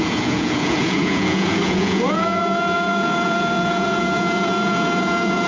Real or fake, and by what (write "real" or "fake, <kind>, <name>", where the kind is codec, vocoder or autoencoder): fake, vocoder, Vocos